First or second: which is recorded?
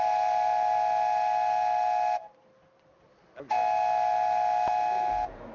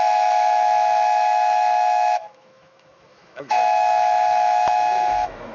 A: first